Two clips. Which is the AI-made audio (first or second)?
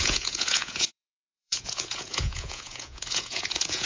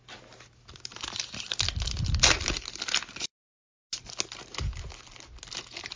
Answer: first